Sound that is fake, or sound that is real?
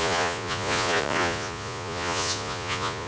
fake